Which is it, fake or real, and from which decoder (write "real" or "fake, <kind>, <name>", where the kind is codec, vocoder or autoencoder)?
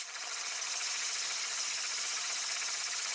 real